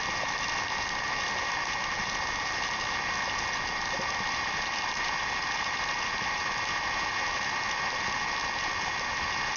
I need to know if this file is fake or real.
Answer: real